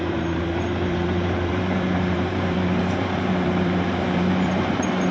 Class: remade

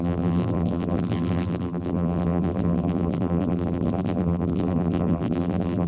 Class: remade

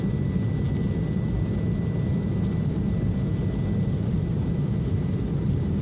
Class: recorded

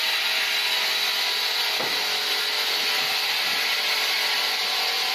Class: recorded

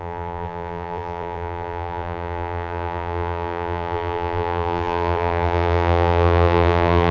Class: remade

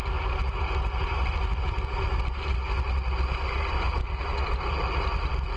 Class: recorded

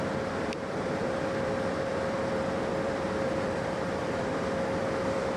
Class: remade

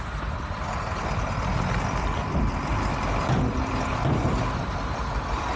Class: remade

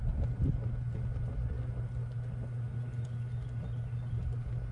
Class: recorded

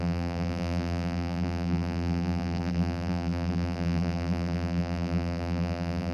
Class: remade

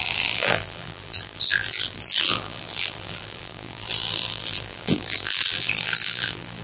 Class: remade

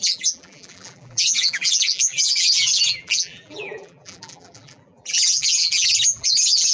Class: remade